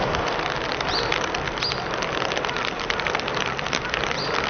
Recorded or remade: recorded